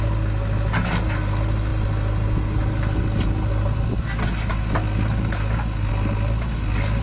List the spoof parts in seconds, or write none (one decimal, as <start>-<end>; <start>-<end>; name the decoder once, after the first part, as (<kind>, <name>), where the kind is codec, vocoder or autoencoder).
none